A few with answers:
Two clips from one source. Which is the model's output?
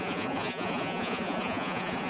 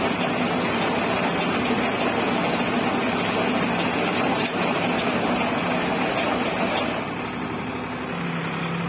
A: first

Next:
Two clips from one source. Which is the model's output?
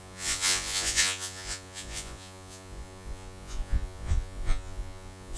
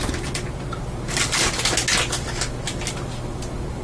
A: first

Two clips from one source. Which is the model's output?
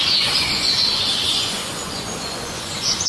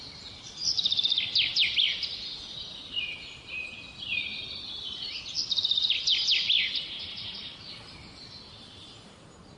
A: first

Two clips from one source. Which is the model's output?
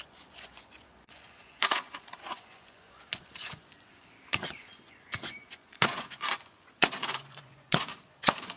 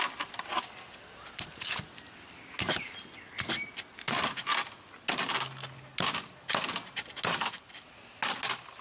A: first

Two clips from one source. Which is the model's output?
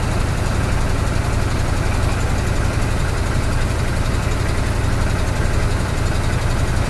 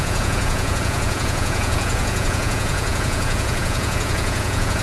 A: second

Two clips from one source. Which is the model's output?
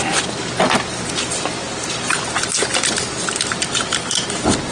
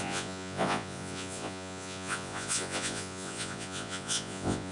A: second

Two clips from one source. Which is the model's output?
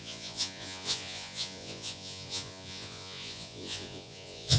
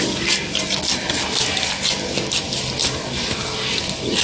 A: first